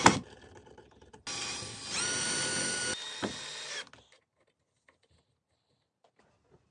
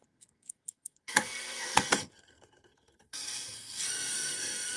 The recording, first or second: first